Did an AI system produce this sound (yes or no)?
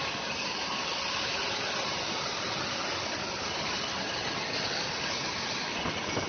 no